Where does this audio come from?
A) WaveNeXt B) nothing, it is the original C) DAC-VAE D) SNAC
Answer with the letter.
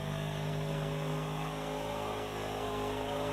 D